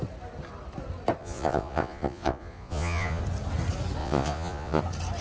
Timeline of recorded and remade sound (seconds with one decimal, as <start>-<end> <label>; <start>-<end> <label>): 0.0-1.2 recorded; 1.2-3.2 remade; 3.2-4.0 recorded; 4.0-4.8 remade; 4.8-5.2 recorded

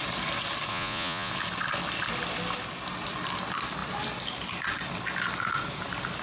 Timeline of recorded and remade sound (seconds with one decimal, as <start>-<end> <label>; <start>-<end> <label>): 0.0-0.7 recorded; 0.7-1.3 remade; 1.3-6.2 recorded

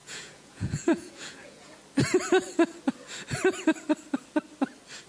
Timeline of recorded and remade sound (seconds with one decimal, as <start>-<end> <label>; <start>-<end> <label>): 0.0-1.8 remade; 1.8-5.1 recorded

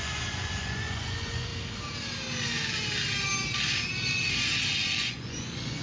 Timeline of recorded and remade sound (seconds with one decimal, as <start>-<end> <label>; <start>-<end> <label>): 0.0-1.5 remade; 1.5-5.0 recorded; 5.0-5.8 remade

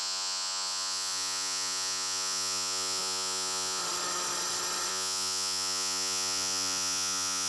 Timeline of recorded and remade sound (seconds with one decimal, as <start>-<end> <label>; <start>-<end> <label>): 0.0-3.8 remade; 3.8-4.9 recorded; 4.9-7.5 remade